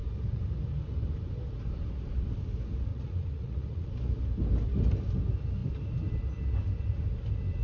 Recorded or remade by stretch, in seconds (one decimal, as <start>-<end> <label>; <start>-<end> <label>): 0.0-2.9 recorded; 2.9-3.9 remade; 3.9-7.6 recorded